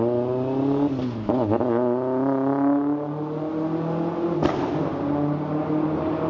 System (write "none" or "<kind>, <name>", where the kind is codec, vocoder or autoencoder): none